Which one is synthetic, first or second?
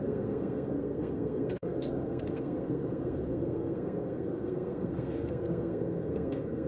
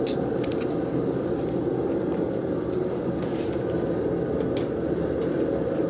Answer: first